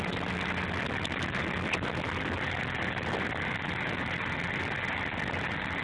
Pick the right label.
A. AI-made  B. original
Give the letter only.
B